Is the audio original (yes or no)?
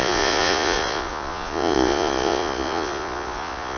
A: no